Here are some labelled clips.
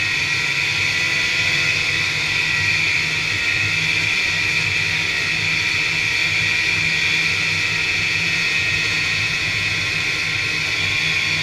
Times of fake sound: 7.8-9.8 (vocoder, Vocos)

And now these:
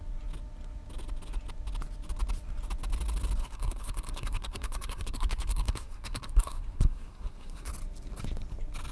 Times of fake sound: 3.4-7.7 (codec, SNAC)

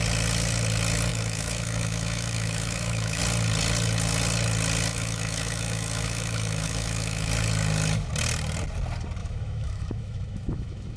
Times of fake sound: 1.1-3.2 (autoencoder, DAC-VAE); 4.9-7.3; 9.2-11.0

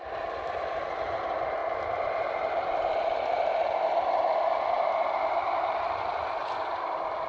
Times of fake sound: none